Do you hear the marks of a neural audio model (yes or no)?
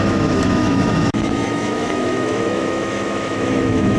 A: yes